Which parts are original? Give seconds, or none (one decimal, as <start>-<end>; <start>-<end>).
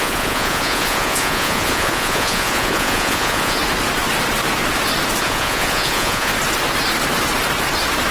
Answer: 3.6-5.2; 6.3-8.1